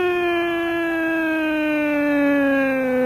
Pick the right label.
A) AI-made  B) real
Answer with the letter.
B